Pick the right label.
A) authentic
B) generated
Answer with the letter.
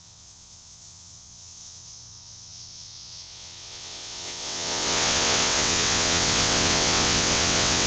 B